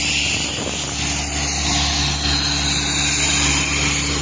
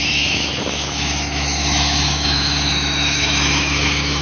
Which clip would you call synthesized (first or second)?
second